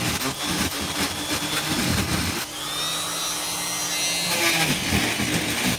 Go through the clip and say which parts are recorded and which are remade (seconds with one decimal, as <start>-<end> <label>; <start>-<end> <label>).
0.0-5.8 recorded

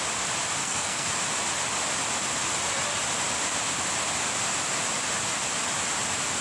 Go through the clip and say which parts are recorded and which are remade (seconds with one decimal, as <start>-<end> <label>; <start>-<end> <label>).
0.0-0.6 recorded; 0.6-1.1 remade; 1.1-6.4 recorded

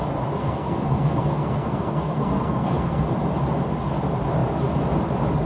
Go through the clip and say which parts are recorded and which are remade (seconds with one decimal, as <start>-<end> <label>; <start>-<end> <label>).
0.0-0.4 recorded; 0.4-3.1 remade; 3.1-5.5 recorded

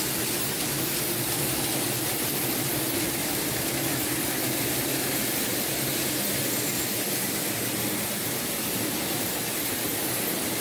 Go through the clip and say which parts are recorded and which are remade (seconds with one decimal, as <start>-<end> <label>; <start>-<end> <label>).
0.0-10.6 recorded

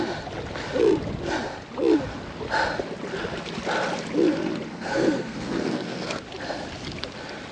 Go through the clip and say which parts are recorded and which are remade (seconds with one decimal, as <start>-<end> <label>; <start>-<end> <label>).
0.0-4.7 recorded; 4.7-6.2 remade; 6.2-7.5 recorded